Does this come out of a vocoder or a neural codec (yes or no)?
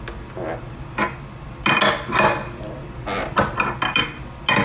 no